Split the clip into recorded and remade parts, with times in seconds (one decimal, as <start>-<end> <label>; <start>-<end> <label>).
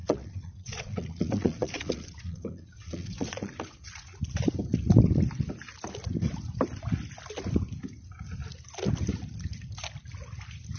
0.0-4.2 remade; 4.2-10.8 recorded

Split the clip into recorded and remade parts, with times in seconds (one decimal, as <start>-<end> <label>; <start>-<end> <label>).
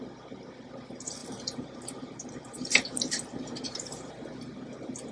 0.0-1.2 recorded; 1.2-4.1 remade; 4.1-5.1 recorded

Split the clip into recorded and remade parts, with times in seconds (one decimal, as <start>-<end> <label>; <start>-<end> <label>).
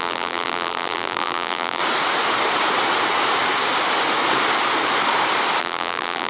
0.0-1.8 remade; 1.8-5.6 recorded; 5.6-6.3 remade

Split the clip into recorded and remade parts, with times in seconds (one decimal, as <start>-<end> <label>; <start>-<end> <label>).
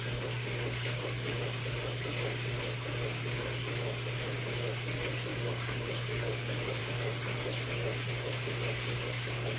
0.0-5.3 recorded; 5.3-6.8 remade; 6.8-9.6 recorded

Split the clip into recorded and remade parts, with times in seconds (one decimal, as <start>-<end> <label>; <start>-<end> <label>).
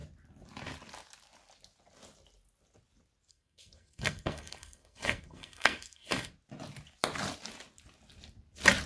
0.0-3.3 recorded; 3.3-6.3 remade; 6.3-8.9 recorded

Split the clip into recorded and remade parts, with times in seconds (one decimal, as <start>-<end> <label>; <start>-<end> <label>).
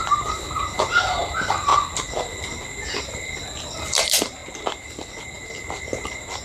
0.0-1.7 remade; 1.7-3.0 recorded; 3.0-4.4 remade; 4.4-5.2 recorded; 5.2-6.4 remade